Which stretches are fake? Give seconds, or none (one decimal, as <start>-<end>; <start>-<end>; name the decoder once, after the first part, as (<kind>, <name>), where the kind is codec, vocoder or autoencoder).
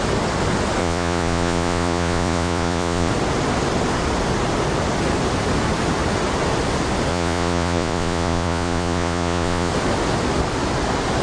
0.8-3.1 (vocoder, Vocos); 7.1-9.7